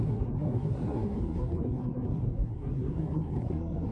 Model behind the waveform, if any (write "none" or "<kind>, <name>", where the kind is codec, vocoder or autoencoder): codec, SNAC